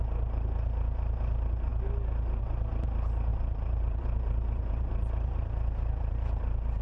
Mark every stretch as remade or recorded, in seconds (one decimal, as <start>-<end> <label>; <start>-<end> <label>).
0.0-3.3 recorded; 3.3-6.8 remade